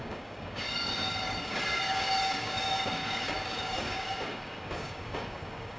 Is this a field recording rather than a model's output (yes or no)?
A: no